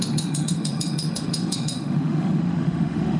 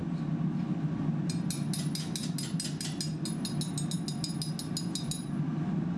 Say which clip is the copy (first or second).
first